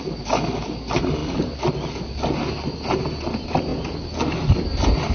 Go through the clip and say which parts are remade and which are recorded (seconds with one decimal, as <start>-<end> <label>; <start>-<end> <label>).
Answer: 0.0-5.1 recorded